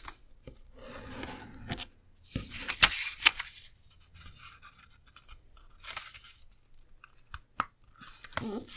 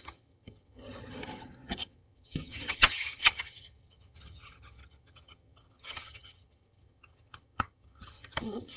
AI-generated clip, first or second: second